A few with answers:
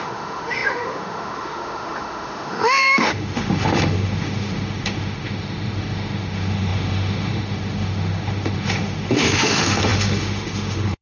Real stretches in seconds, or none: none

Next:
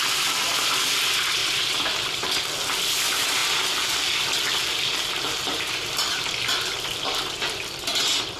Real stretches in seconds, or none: 0.0-8.4

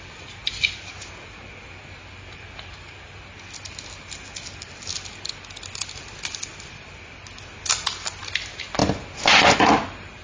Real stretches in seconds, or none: 0.0-10.2

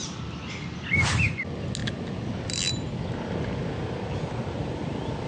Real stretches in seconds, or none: 0.0-5.3

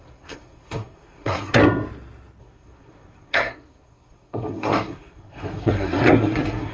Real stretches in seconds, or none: 1.6-2.4

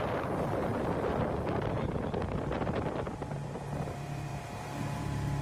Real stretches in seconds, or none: 0.0-4.3; 5.0-5.4